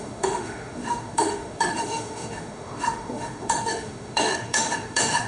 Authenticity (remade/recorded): remade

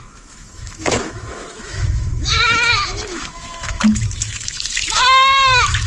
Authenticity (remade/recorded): remade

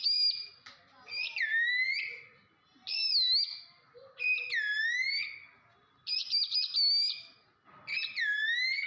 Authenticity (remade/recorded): recorded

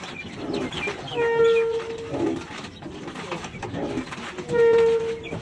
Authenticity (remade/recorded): recorded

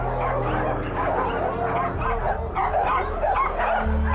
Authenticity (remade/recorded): recorded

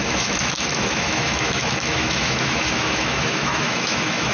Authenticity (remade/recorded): remade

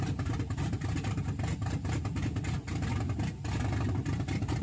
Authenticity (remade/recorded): recorded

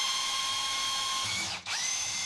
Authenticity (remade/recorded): remade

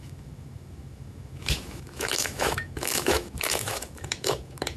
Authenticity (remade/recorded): remade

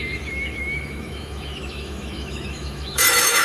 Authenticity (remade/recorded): remade